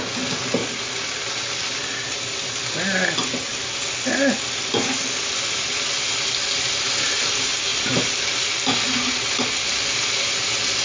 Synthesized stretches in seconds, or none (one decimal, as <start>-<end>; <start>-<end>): none